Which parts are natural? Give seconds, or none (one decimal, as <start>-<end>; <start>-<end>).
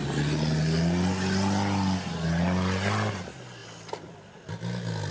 0.0-5.1